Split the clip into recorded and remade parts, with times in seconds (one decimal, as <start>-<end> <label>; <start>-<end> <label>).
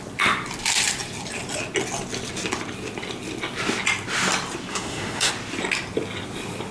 0.0-4.7 recorded; 4.7-5.3 remade; 5.3-6.7 recorded